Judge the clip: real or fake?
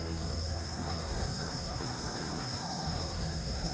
fake